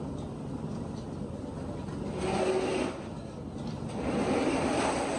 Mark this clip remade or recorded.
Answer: recorded